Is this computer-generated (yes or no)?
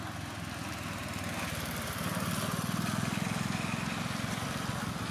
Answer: no